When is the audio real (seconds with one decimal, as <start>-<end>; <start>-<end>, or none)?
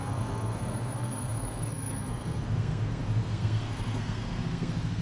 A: none